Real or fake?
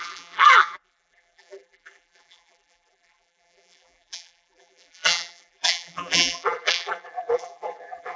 fake